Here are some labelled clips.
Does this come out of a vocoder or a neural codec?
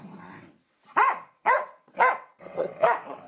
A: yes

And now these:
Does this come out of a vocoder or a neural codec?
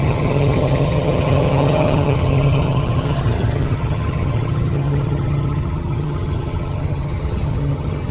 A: yes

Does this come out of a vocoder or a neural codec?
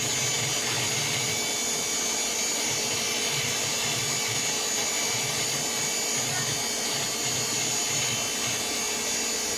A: no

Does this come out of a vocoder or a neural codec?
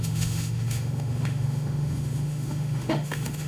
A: yes